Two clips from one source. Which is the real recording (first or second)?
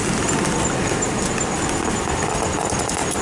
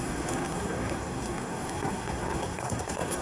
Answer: first